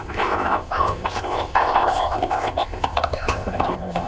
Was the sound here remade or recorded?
remade